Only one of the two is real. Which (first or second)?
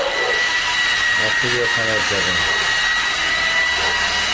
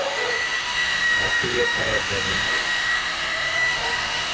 first